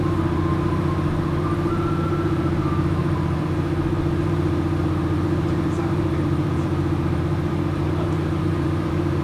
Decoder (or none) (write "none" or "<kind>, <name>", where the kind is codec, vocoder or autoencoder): vocoder, BigVGAN v2